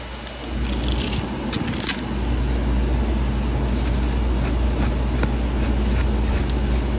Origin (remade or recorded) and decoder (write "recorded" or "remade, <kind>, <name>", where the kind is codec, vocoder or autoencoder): recorded